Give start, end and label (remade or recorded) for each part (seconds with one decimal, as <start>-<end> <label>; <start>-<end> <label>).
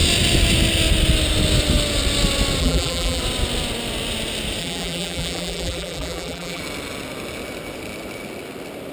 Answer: 0.0-2.6 recorded; 2.6-3.2 remade; 3.2-4.6 recorded; 4.6-6.6 remade; 6.6-8.9 recorded